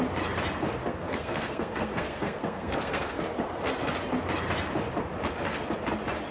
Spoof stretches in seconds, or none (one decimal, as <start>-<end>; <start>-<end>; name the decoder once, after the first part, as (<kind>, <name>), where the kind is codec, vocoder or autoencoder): 0.8-3.2 (codec, SNAC)